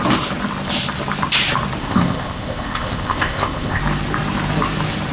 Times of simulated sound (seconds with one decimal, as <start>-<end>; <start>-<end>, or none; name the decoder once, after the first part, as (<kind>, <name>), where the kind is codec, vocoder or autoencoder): 1.8-3.8 (codec, ZipCodec)